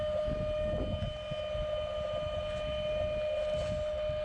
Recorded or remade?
recorded